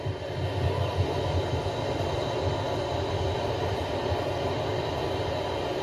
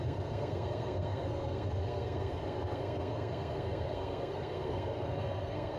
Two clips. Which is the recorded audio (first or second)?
first